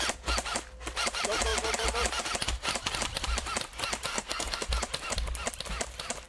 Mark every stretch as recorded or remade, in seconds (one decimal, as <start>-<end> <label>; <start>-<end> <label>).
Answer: 0.0-4.1 recorded; 4.1-4.7 remade; 4.7-6.3 recorded